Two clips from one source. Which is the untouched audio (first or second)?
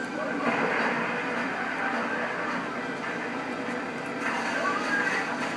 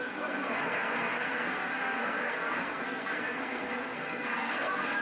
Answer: first